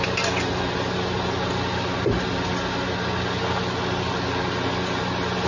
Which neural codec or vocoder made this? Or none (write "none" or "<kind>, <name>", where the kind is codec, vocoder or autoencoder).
none